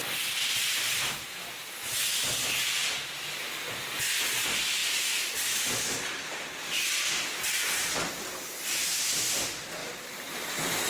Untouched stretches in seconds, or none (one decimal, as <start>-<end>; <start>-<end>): 0.0-9.8